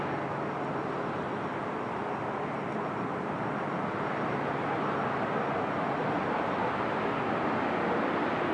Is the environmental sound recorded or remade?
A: recorded